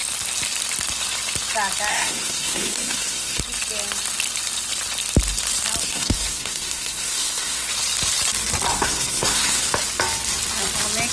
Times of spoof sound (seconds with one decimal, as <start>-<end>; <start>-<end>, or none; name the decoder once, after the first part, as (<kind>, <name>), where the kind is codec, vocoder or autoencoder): 1.9-3.4 (codec, SNAC); 5.8-7.7; 8.7-9.7